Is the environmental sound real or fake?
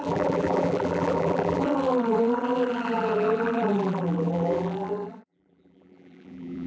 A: fake